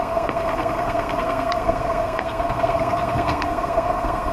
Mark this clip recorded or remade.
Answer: remade